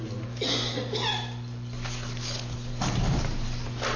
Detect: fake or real real